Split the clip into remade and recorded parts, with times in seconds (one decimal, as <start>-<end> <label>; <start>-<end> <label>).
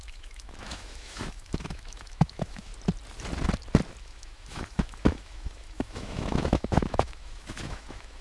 0.0-2.7 remade; 2.7-4.0 recorded; 4.0-8.2 remade